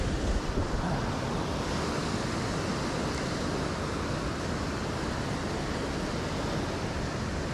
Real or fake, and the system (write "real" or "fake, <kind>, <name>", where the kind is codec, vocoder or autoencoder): real